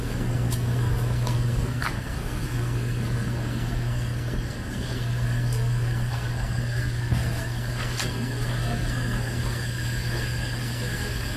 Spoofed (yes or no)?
yes